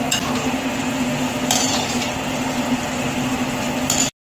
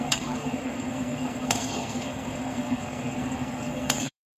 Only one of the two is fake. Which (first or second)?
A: second